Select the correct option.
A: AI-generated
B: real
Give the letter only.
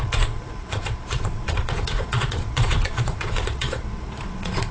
A